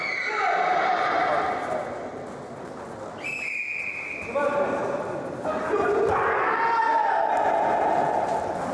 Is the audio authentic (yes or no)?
yes